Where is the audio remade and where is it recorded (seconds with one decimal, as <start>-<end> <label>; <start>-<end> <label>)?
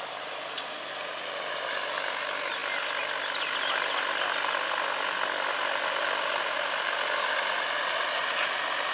0.0-8.9 recorded